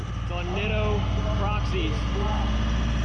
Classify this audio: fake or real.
real